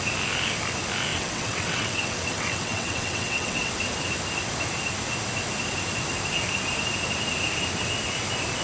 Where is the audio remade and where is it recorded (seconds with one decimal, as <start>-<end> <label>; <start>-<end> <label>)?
0.0-1.1 recorded; 1.1-3.7 remade; 3.7-8.6 recorded